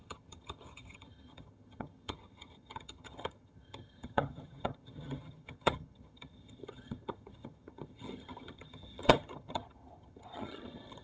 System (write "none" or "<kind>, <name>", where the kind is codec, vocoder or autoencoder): vocoder, HiFi-GAN